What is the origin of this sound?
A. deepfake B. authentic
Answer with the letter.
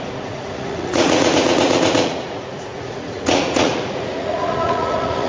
A